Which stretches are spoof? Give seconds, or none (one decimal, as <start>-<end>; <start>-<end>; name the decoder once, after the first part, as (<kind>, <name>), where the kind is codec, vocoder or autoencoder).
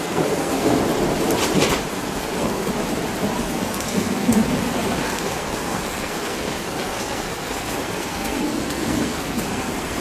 0.0-0.8 (codec, SNAC); 1.9-2.7; 3.4-10.0